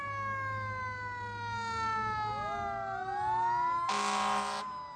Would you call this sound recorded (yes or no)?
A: yes